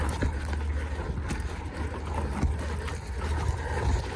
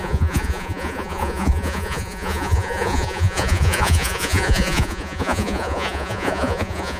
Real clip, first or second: first